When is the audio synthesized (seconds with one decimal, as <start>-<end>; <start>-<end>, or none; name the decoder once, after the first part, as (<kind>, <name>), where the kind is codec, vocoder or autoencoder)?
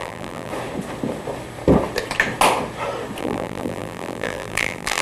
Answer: 0.0-0.5 (vocoder, BigVGAN v2); 3.2-5.0